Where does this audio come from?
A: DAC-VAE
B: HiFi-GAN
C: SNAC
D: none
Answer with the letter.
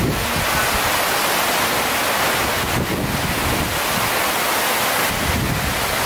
D